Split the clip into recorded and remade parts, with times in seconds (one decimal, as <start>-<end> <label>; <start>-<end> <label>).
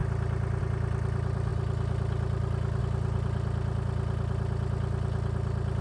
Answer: 0.0-5.8 recorded